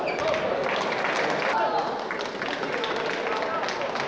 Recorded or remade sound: recorded